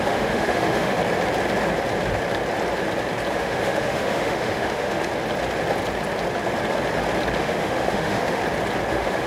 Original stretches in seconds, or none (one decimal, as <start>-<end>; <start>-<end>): 1.0-3.3; 5.1-7.4; 8.4-8.9